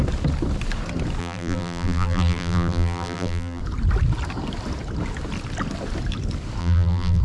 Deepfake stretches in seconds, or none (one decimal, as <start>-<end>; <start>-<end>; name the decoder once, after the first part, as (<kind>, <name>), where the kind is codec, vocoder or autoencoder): 1.2-3.6 (vocoder, BigVGAN v2); 6.6-7.2